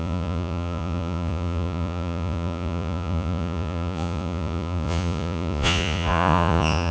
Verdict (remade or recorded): remade